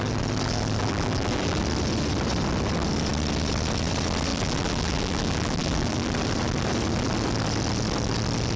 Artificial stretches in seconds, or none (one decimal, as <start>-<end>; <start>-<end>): 0.8-1.6; 4.3-6.1

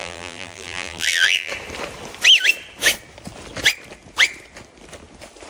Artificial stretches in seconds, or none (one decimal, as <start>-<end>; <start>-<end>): 0.0-1.5

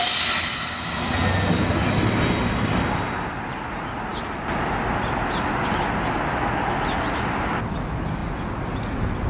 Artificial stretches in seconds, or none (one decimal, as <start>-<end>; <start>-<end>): none